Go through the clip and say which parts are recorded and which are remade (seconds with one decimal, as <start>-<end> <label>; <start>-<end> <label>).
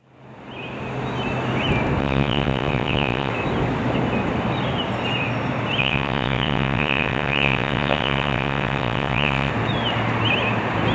0.0-2.0 recorded; 2.0-3.3 remade; 3.3-5.8 recorded; 5.8-9.5 remade; 9.5-10.9 recorded